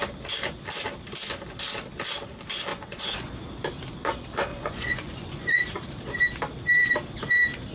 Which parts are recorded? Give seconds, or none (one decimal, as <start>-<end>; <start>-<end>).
0.0-2.7; 3.3-4.5; 5.6-7.7